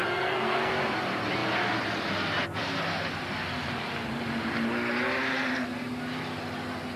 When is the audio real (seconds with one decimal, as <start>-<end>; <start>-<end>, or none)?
0.7-7.0